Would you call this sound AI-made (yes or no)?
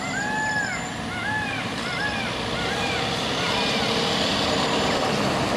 no